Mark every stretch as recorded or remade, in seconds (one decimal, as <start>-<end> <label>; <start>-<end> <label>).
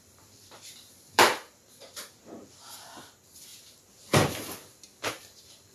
0.0-1.3 remade; 1.3-2.1 recorded; 2.1-3.5 remade; 3.5-5.1 recorded; 5.1-5.7 remade